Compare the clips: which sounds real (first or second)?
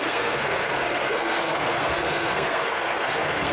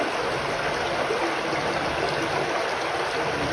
second